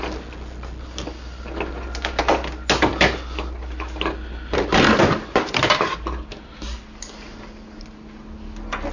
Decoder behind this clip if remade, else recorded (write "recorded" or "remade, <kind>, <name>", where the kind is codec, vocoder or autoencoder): recorded